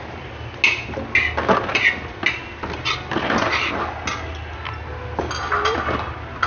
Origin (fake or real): real